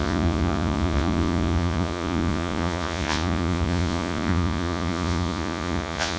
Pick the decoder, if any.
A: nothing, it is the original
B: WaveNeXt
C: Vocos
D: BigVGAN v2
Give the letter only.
C